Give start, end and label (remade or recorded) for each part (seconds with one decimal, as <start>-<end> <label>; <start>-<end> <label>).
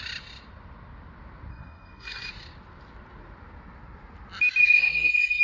0.0-1.5 recorded; 1.5-2.3 remade; 2.3-4.6 recorded; 4.6-5.4 remade